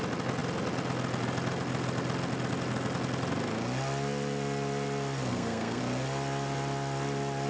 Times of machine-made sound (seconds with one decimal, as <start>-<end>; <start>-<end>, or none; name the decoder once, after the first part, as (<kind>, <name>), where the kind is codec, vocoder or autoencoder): 5.3-5.8 (codec, SNAC)